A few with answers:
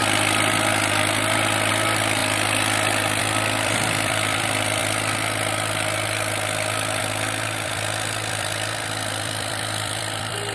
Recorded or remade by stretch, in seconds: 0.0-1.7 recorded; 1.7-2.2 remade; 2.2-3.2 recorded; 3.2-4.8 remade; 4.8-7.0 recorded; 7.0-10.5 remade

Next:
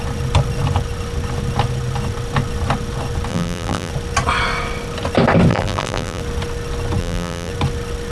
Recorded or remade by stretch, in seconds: 0.0-3.3 recorded; 3.3-3.9 remade; 3.9-5.5 recorded; 5.5-6.2 remade; 6.2-7.0 recorded; 7.0-7.5 remade; 7.5-8.1 recorded

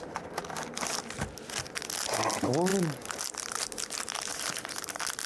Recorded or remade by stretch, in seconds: 0.0-5.3 recorded

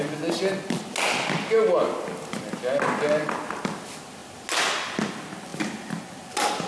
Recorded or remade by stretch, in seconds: 0.0-6.7 recorded

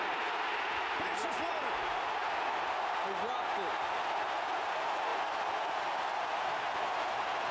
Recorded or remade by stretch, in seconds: 0.0-7.5 recorded